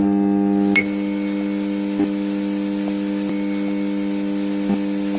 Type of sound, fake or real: real